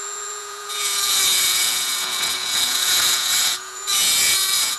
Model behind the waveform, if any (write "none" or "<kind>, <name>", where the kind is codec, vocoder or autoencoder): vocoder, Vocos